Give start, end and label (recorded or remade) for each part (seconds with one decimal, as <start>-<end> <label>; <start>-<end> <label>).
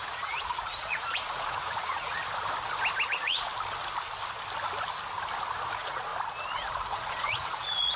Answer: 0.0-2.2 remade; 2.2-3.1 recorded; 3.1-3.5 remade; 3.5-5.6 recorded; 5.6-6.1 remade; 6.1-6.7 recorded; 6.7-8.0 remade